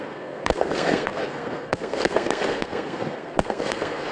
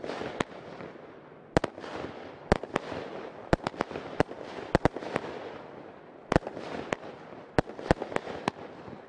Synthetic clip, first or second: first